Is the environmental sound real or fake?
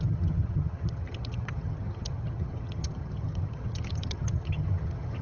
fake